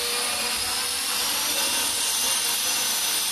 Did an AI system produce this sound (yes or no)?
no